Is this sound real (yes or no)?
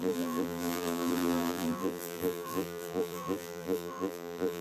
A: no